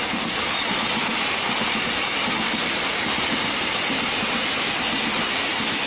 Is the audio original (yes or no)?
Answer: yes